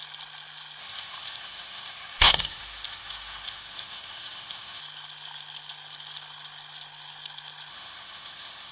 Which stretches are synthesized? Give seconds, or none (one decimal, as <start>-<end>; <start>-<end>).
0.8-4.8; 7.7-8.7

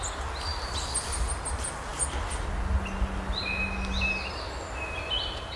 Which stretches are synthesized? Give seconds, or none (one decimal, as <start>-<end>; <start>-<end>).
none

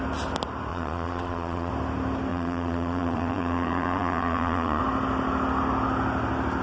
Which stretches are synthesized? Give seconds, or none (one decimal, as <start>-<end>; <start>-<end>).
0.7-1.7; 2.3-4.8